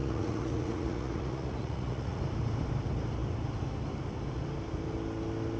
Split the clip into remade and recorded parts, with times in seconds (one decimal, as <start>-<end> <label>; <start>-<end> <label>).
0.0-2.2 remade; 2.2-5.6 recorded